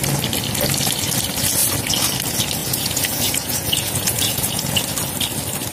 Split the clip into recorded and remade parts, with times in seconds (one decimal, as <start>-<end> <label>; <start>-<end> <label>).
0.0-2.6 recorded; 2.6-4.8 remade; 4.8-5.7 recorded